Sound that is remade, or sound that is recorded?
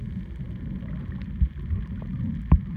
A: recorded